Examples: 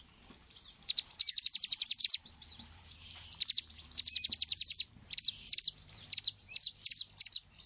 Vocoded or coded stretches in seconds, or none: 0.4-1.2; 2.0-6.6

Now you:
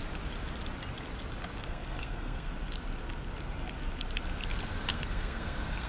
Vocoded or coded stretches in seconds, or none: 1.6-2.5; 4.9-5.9

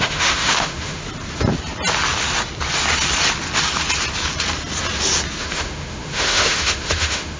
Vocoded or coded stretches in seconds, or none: 0.0-1.0; 5.4-7.4

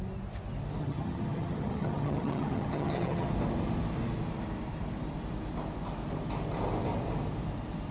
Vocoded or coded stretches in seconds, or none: 0.8-3.3

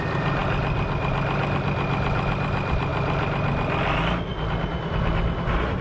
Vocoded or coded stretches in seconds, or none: none

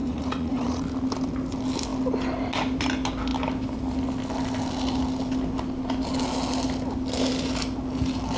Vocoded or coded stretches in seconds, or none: 0.0-0.8

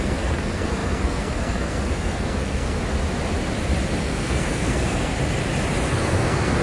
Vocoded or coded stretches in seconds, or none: 0.0-2.8; 4.0-5.1; 5.9-6.6

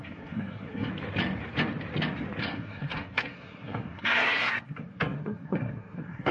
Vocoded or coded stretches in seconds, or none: 0.0-0.9; 2.4-6.3